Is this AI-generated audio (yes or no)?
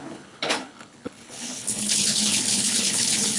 yes